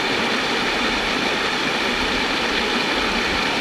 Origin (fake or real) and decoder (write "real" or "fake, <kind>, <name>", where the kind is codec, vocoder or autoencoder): real